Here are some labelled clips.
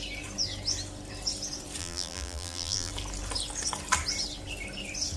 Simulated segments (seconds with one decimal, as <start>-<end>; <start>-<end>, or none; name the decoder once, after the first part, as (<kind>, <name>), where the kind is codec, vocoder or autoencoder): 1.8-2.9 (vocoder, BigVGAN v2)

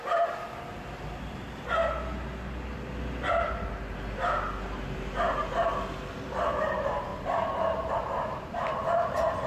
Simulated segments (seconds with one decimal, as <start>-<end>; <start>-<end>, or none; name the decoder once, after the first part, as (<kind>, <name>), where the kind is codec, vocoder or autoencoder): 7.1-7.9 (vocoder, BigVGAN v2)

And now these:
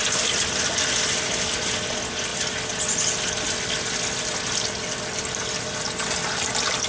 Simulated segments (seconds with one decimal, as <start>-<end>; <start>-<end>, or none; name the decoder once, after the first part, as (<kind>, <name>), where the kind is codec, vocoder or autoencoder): 0.0-0.9 (vocoder, BigVGAN v2)